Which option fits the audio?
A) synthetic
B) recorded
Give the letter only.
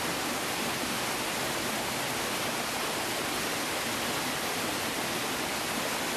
B